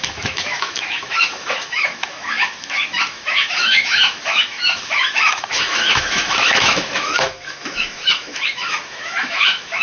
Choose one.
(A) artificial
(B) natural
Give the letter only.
A